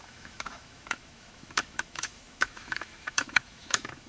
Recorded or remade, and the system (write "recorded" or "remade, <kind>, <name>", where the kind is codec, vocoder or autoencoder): remade, autoencoder, DAC-VAE